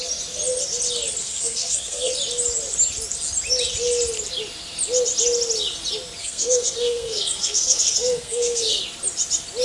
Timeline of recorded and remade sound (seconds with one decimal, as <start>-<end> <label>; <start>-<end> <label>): 0.0-1.2 recorded; 1.2-2.1 remade; 2.1-6.2 recorded; 6.2-8.8 remade; 8.8-9.6 recorded